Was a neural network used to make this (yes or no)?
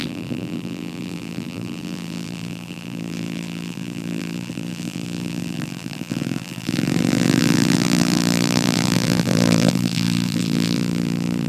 yes